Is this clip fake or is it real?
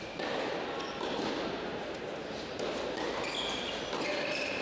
real